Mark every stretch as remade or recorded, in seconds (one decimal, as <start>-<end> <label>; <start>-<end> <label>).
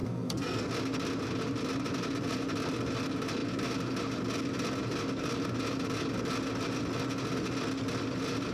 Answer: 0.0-0.7 remade; 0.7-8.5 recorded